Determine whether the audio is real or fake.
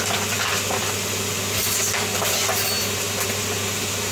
real